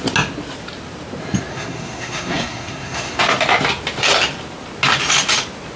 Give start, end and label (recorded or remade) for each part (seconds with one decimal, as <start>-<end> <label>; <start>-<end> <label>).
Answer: 0.0-1.5 recorded; 1.5-3.2 remade; 3.2-5.8 recorded